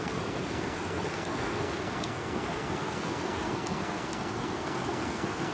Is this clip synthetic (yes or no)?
yes